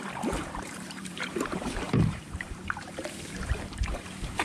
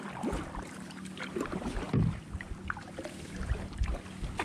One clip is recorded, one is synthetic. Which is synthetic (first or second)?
first